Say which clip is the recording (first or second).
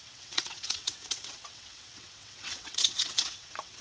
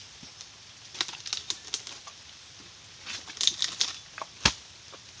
second